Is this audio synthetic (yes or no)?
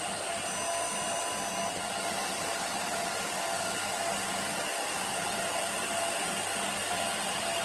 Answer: no